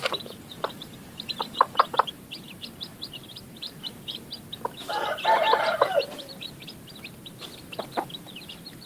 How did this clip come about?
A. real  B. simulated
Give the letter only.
B